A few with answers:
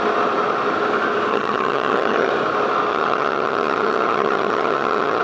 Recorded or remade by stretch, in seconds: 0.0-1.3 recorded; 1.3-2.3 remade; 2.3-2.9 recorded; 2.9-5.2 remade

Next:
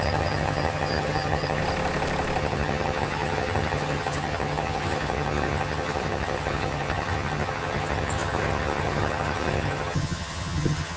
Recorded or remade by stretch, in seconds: 0.0-1.6 remade; 1.6-2.4 recorded; 2.4-11.0 remade

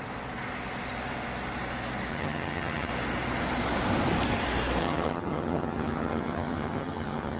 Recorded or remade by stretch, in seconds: 0.0-2.1 recorded; 2.1-2.9 remade; 2.9-4.8 recorded; 4.8-7.4 remade

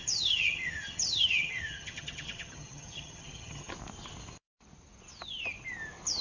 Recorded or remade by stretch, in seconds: 0.0-3.7 remade; 3.7-6.2 recorded